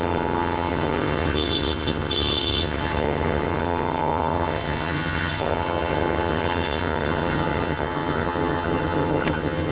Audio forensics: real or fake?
fake